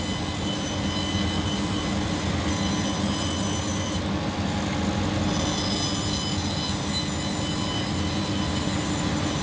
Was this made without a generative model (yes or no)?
yes